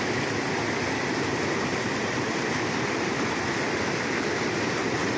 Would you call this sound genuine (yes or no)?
yes